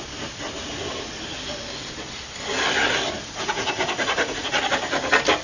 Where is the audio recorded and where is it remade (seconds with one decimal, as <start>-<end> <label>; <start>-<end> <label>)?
0.0-3.2 recorded; 3.2-4.6 remade; 4.6-5.4 recorded